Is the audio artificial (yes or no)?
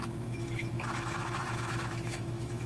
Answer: yes